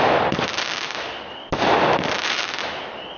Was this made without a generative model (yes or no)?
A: yes